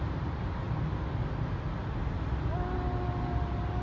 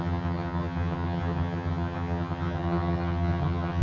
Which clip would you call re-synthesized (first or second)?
second